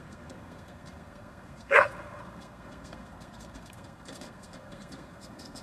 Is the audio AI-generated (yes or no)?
yes